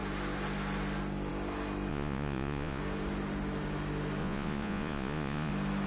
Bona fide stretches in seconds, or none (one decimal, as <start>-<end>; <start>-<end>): 0.0-1.9; 2.8-4.2; 5.5-5.9